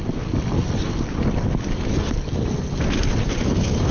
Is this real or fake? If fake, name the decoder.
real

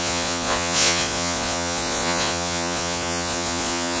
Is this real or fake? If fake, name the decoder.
fake, vocoder, Vocos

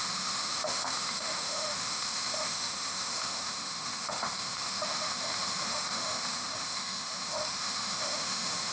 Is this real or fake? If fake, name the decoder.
fake, autoencoder, DAC-VAE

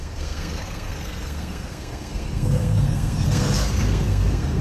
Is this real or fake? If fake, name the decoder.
fake, codec, SNAC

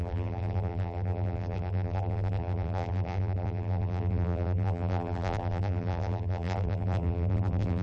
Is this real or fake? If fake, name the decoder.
fake, vocoder, BigVGAN v2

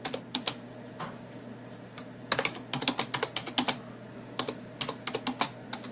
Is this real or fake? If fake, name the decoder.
real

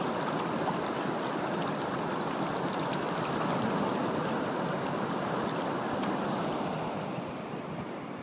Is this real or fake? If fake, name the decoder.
real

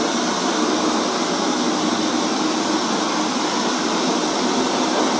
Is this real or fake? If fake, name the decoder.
real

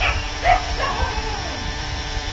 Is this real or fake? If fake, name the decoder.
fake, vocoder, BigVGAN v2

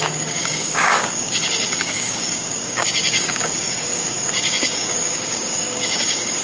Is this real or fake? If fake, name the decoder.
fake, codec, DAC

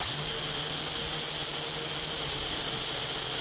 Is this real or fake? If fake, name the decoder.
real